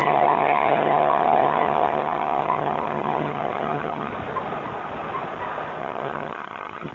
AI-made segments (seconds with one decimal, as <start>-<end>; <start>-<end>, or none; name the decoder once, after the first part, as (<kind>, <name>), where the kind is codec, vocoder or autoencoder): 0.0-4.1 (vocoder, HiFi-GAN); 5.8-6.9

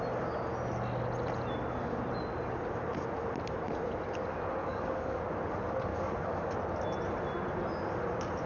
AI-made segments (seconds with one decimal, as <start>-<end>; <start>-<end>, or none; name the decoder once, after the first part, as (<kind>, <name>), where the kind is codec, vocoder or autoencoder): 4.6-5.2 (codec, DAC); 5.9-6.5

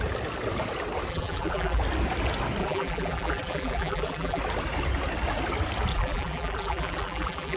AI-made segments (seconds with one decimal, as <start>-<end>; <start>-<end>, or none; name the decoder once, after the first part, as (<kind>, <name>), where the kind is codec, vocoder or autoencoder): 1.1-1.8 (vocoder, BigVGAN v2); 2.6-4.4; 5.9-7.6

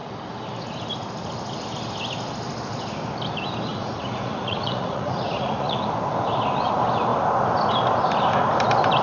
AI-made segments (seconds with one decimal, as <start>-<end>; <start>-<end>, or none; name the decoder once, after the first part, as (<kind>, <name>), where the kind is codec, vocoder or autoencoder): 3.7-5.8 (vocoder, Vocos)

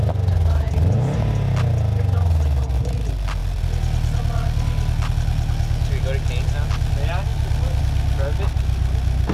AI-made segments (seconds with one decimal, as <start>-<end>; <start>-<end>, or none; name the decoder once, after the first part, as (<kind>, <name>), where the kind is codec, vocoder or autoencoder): none